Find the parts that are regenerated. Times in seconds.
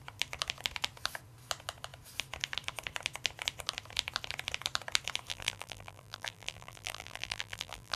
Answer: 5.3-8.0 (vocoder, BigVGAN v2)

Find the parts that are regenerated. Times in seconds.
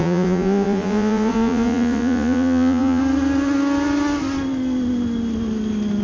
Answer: 0.0-3.0 (vocoder, Vocos)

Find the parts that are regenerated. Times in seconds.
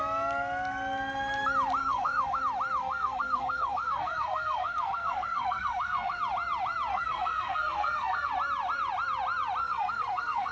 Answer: 1.8-2.4 (codec, SNAC); 2.8-6.2; 6.9-8.3; 9.6-10.5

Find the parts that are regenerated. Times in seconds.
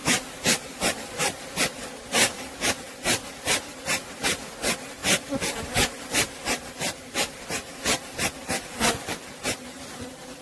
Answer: none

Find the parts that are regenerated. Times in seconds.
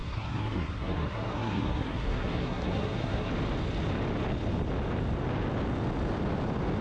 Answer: 0.0-3.3 (codec, SNAC)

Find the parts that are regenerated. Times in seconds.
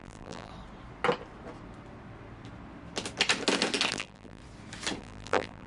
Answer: 0.0-0.5 (vocoder, BigVGAN v2); 3.9-4.4; 5.0-5.7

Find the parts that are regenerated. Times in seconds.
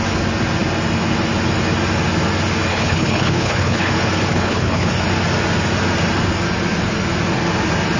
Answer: 2.7-3.9 (codec, HILCodec); 4.3-4.9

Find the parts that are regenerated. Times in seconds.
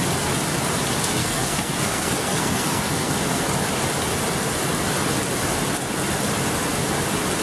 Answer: 1.2-3.4 (codec, SNAC)